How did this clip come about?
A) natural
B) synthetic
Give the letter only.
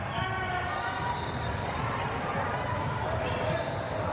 A